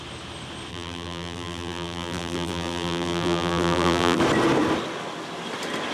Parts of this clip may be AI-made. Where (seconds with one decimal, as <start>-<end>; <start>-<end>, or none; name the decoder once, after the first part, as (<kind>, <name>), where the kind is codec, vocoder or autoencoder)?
0.7-4.2 (vocoder, BigVGAN v2)